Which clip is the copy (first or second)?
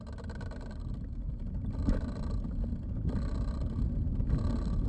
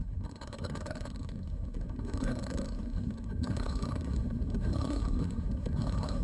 second